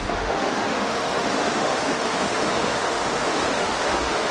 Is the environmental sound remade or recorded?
remade